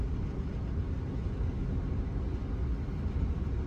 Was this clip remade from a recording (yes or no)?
no